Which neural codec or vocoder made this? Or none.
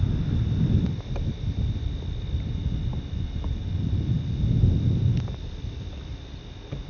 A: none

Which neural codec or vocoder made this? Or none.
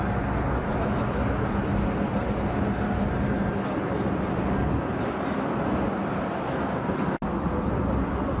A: none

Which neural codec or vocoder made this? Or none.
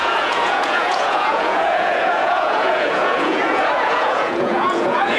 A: vocoder, Vocos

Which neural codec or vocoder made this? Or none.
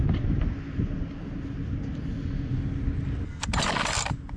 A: none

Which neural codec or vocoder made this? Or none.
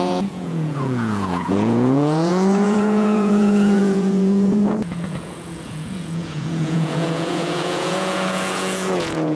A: vocoder, Vocos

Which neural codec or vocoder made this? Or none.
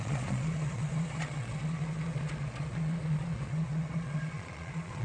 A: vocoder, Vocos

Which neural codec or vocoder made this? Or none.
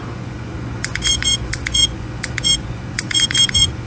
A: vocoder, Vocos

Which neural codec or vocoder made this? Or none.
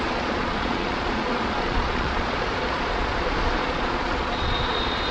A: vocoder, Vocos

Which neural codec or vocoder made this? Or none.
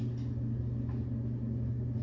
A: none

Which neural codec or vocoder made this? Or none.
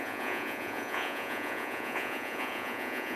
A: vocoder, Vocos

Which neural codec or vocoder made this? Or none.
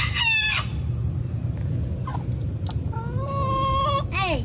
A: none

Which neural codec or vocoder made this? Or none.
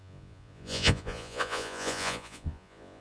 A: vocoder, Vocos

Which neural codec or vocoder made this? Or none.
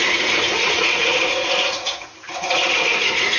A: vocoder, Vocos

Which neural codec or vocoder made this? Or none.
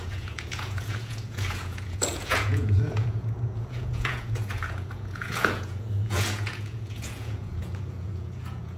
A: vocoder, Vocos